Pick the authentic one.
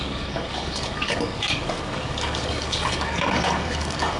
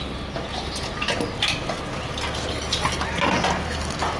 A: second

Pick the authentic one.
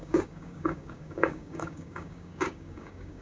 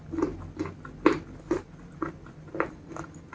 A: second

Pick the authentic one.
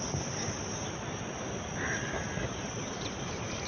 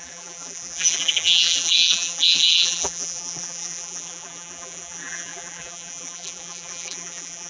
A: first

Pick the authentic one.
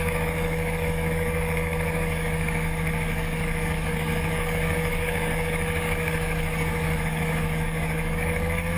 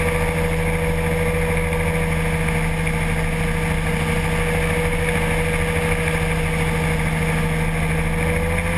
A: second